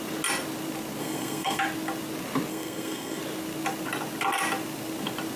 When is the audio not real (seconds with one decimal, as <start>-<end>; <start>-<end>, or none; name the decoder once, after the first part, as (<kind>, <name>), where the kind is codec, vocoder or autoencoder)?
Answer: 1.0-1.6 (codec, SNAC); 2.5-3.2